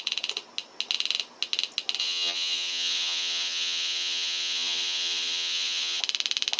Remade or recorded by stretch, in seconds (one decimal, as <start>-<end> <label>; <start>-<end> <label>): 0.0-2.0 recorded; 2.0-6.0 remade; 6.0-6.6 recorded

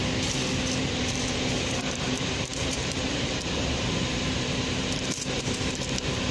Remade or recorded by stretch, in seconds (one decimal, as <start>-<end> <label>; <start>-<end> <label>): 0.0-0.8 recorded; 0.8-6.3 remade

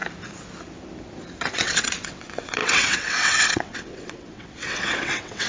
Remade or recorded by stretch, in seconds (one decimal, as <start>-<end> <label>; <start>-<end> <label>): 0.0-1.5 recorded; 1.5-5.5 remade